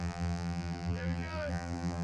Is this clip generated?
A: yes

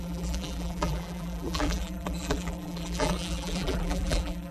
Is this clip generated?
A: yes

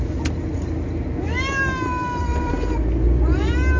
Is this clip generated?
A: no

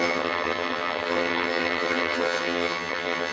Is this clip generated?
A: yes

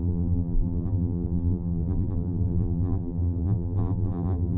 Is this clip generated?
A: yes